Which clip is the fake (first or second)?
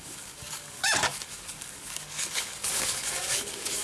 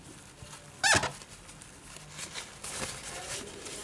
first